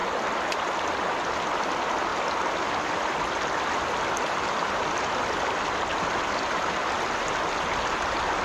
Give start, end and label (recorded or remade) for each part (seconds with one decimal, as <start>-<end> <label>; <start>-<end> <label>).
0.0-8.4 recorded